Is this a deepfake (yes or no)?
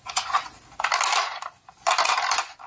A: no